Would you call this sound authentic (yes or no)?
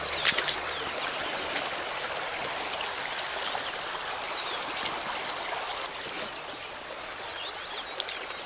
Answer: yes